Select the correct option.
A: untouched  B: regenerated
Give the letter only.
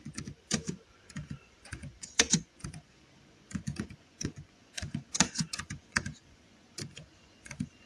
B